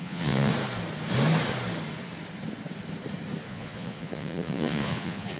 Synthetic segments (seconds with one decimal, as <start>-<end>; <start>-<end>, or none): 0.0-0.5; 3.4-5.4